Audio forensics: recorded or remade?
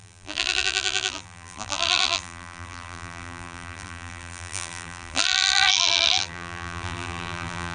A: remade